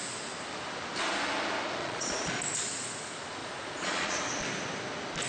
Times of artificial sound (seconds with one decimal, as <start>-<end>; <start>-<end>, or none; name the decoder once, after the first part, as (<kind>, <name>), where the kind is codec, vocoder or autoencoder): 1.8-2.3 (vocoder, Vocos); 3.4-4.2